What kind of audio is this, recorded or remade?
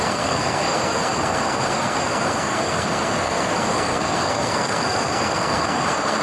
remade